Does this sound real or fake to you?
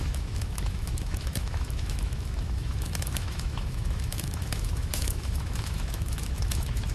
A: fake